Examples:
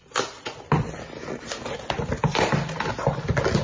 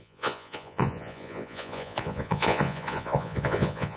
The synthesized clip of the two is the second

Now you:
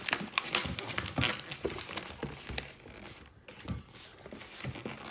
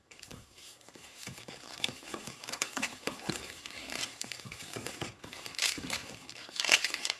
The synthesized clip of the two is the second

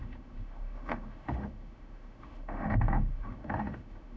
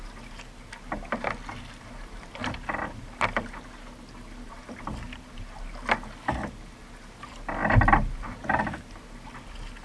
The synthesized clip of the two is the first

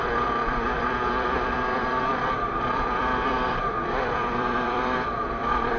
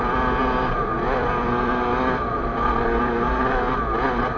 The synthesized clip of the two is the first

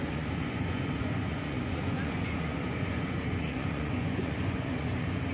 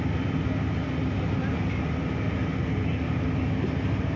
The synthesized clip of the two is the first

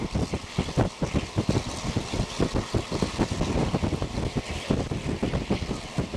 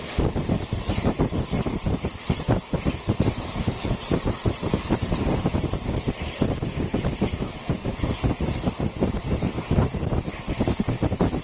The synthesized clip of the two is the second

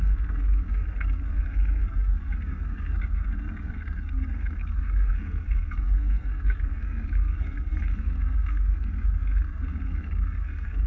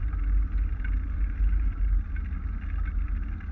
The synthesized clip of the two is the first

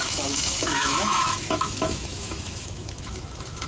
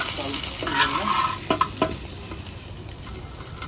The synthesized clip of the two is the first